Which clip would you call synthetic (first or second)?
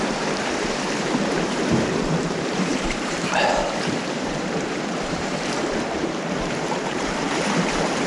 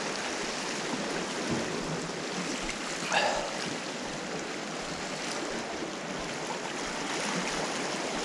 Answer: first